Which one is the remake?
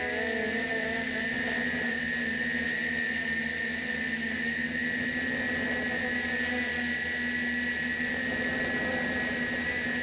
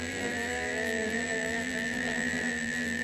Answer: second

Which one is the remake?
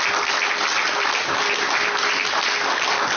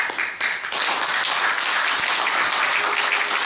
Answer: first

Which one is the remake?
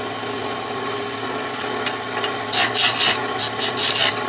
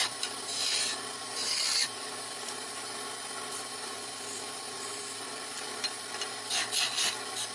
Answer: second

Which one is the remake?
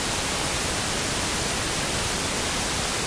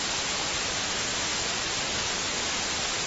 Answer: first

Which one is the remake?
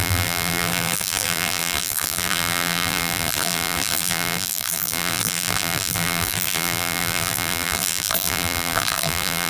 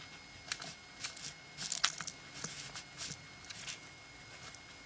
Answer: first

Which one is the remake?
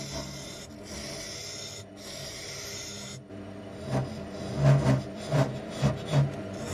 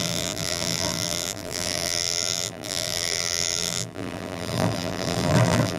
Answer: second